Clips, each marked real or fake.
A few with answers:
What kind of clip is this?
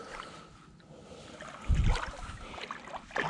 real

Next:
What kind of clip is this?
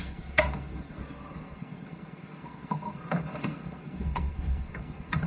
fake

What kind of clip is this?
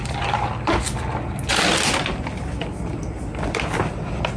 real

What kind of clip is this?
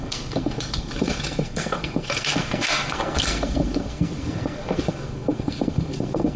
fake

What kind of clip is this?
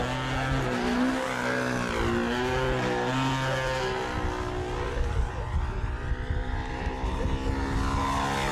real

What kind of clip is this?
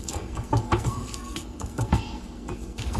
fake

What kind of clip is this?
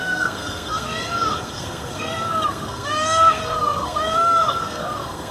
fake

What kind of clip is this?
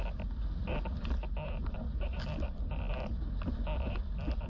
real